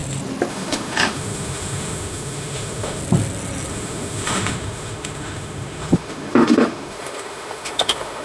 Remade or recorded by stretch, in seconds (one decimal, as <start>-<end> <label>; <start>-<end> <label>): 0.0-0.5 recorded; 0.5-3.0 remade; 3.0-3.7 recorded; 3.7-8.2 remade